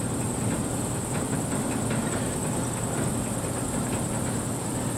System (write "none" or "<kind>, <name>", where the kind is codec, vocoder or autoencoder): none